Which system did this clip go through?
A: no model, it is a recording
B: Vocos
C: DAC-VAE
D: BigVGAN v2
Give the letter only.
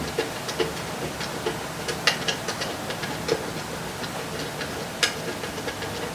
A